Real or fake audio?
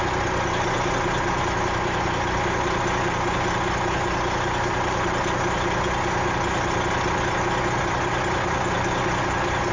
real